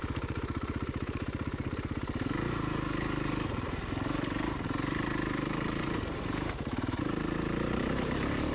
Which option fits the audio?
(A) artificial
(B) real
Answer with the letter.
A